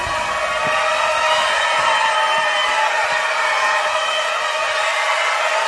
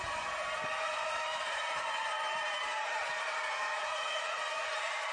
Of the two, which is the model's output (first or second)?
second